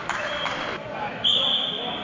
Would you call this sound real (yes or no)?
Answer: yes